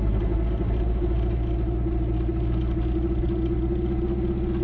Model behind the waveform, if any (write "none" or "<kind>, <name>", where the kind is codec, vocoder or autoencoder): none